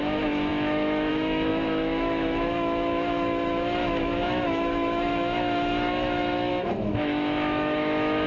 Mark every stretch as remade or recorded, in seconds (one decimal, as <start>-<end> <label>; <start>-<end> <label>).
0.0-8.3 remade